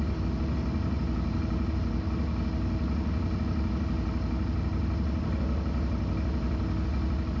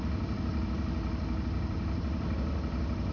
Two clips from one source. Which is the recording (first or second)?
first